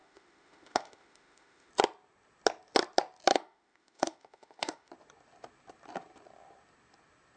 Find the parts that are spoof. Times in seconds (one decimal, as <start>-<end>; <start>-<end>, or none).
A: 0.0-1.7; 3.3-4.9

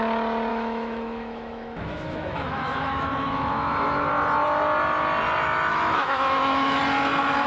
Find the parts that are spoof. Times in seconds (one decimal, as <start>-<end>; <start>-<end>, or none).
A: 0.5-4.1; 5.7-6.8